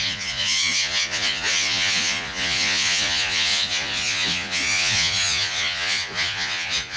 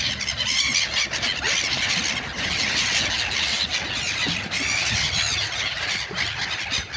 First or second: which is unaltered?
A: second